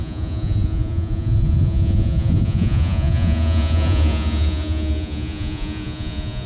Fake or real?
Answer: fake